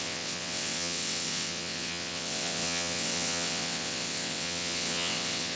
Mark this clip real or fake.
fake